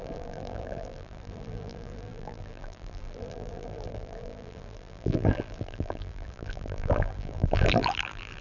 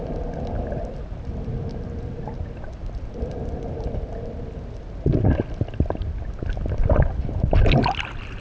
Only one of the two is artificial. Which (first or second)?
first